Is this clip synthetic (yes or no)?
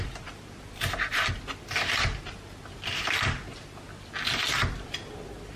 no